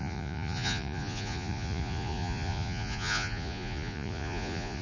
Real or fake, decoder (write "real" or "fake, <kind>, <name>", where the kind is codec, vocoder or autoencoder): fake, vocoder, Vocos